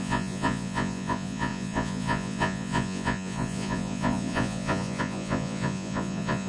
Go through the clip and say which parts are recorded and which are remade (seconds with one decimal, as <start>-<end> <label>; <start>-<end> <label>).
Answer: 0.0-6.5 remade